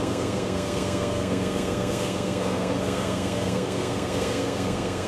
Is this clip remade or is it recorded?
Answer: remade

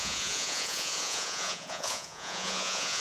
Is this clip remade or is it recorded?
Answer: remade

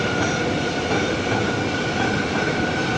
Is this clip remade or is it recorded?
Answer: recorded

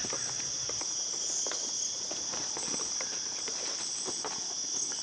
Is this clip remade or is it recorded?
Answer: recorded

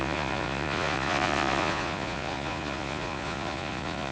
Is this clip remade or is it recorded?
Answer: remade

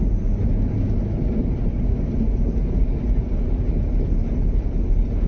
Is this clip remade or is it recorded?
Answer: recorded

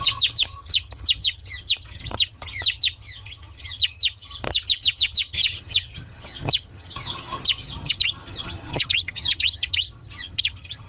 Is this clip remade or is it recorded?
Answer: remade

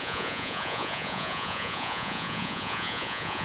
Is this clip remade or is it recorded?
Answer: remade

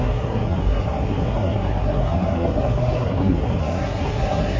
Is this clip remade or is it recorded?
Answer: remade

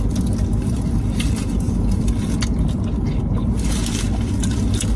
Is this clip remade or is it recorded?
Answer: recorded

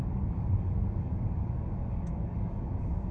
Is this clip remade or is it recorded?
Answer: remade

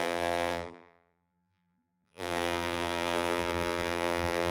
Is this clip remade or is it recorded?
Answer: remade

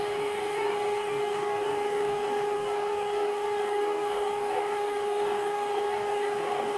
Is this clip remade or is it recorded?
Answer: remade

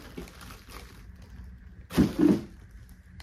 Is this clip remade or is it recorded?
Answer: recorded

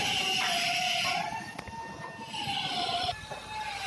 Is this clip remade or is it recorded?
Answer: recorded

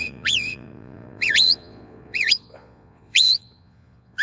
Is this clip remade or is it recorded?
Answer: remade